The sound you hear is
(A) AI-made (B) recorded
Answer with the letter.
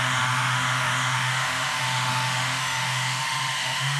A